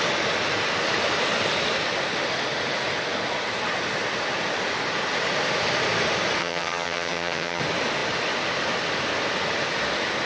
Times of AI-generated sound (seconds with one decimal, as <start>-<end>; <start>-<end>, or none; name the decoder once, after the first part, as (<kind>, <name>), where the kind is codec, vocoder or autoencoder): 6.4-7.6 (vocoder, HiFi-GAN)